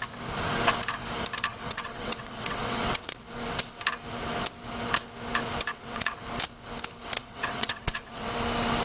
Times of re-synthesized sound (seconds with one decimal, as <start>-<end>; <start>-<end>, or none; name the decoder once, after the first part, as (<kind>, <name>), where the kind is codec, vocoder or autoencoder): 1.5-3.2 (vocoder, WaveNeXt); 5.7-6.2; 7.2-8.3

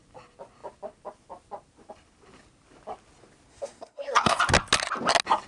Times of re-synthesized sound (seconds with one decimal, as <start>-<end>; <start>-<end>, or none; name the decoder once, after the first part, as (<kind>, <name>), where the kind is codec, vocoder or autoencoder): 3.5-4.4 (codec, SNAC)

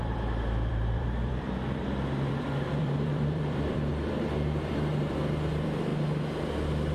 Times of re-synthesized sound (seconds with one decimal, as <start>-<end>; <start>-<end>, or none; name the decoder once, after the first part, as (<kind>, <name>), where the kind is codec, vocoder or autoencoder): 0.0-5.9 (vocoder, BigVGAN v2)

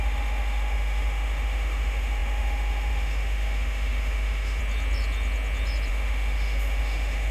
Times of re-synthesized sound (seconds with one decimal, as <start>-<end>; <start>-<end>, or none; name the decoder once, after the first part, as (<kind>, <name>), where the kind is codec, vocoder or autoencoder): 0.0-4.6 (autoencoder, DAC-VAE); 5.9-7.3

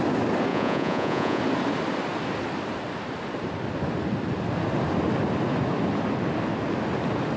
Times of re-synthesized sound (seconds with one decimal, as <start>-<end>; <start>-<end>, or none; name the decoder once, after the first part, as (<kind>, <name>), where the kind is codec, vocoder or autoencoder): 0.5-1.4 (vocoder, Vocos)

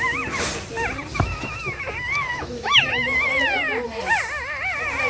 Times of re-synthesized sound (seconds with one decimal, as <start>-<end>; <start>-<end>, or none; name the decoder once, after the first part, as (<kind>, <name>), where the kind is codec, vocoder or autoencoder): 1.1-1.8 (autoencoder, DAC-VAE); 2.3-3.3